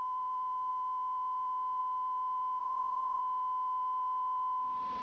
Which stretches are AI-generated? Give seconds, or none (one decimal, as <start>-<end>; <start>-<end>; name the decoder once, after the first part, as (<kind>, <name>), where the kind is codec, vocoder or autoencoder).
2.6-3.2 (vocoder, WaveNeXt)